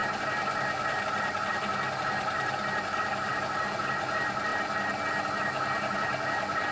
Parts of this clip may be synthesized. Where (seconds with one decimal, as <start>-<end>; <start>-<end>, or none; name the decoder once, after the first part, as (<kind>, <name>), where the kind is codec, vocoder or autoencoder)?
none